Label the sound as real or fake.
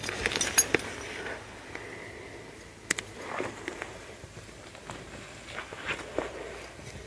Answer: real